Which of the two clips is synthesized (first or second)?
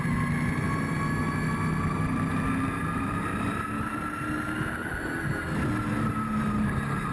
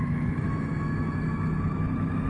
second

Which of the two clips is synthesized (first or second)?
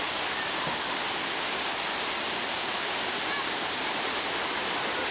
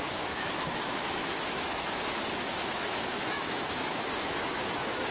second